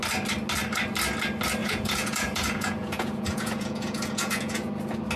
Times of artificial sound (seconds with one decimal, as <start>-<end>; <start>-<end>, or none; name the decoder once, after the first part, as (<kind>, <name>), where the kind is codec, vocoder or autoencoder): 1.6-4.7 (vocoder, Vocos)